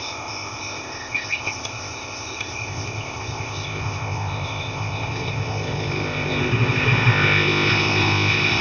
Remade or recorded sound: remade